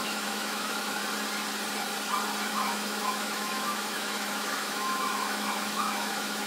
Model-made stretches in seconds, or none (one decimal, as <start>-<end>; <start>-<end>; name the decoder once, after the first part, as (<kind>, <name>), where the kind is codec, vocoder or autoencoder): 0.0-1.0 (autoencoder, DAC-VAE); 2.5-6.5